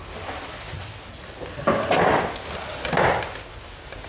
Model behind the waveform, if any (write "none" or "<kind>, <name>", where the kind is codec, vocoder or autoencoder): none